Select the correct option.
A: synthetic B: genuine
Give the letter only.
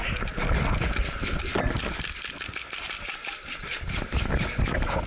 B